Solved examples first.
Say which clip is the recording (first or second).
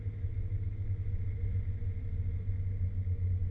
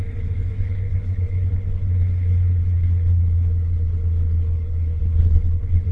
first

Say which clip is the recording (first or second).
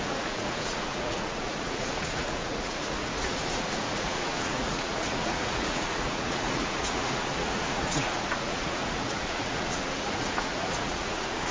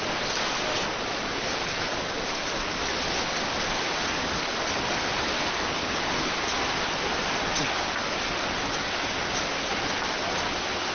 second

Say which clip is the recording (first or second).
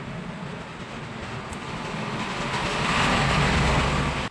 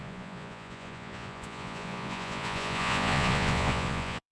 first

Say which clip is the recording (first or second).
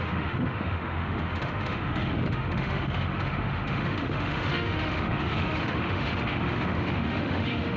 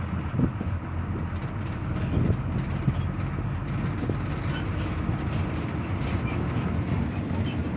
second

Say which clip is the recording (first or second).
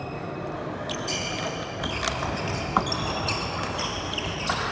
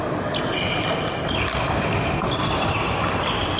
first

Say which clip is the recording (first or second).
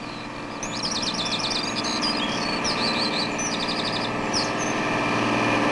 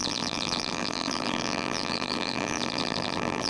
first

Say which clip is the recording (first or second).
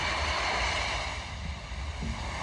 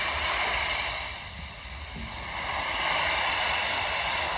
first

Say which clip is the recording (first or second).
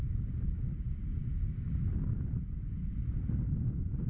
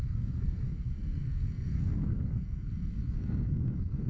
first